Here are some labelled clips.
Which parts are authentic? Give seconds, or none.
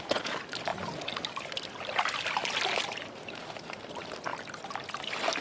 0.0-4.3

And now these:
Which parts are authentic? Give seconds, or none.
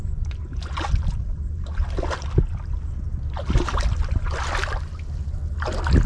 0.0-6.1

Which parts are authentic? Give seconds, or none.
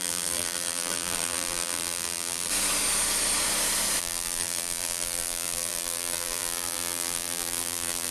2.5-4.0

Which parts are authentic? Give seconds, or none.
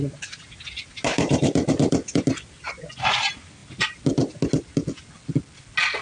0.0-1.1; 2.2-6.0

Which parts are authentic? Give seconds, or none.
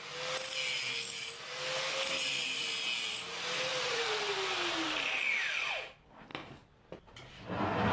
0.0-3.7; 5.2-7.9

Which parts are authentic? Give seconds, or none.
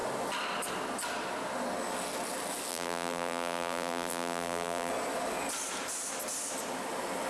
0.0-2.7; 4.9-7.3